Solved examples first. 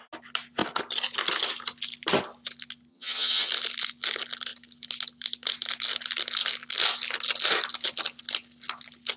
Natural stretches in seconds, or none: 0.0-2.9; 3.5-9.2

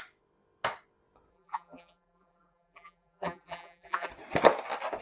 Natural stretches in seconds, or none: 0.0-1.3; 4.1-5.0

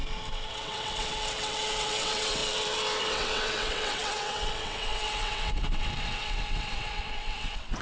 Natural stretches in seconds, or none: 0.0-0.5; 2.4-3.0

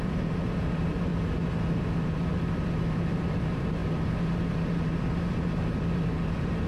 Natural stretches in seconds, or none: 1.1-1.8

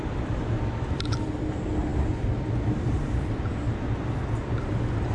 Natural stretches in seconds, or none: 0.0-5.1